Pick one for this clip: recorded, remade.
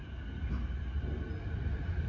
recorded